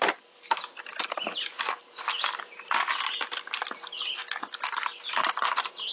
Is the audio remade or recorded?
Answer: recorded